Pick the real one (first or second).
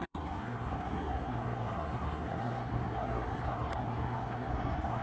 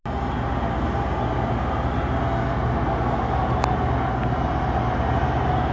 second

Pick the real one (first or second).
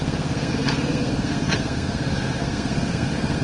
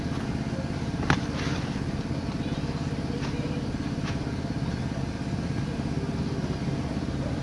second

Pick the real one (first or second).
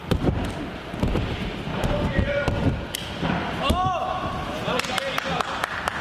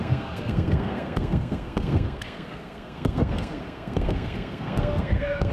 first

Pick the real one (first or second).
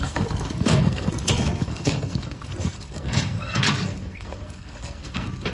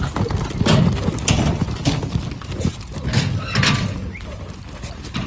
second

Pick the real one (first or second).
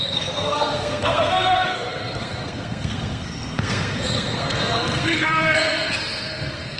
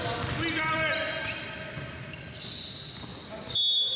second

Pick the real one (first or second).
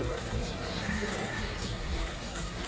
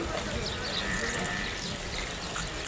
second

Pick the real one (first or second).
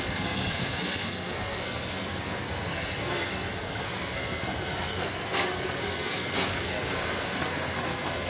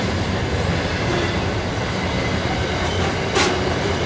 second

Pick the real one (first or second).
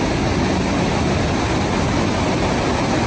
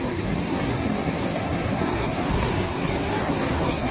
first